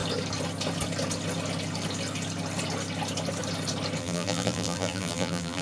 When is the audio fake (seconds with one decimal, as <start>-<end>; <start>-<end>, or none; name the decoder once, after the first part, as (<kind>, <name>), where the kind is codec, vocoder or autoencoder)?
4.0-5.6 (vocoder, BigVGAN v2)